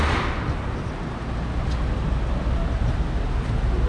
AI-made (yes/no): no